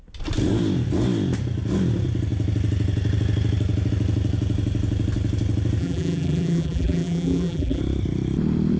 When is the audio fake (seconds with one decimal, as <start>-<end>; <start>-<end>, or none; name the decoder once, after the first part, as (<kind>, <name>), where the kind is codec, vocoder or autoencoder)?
5.8-7.8 (vocoder, BigVGAN v2)